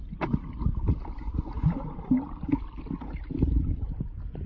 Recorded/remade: recorded